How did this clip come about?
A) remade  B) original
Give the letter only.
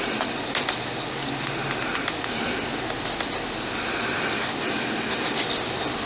B